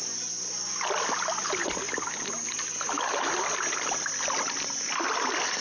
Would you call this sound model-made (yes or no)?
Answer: no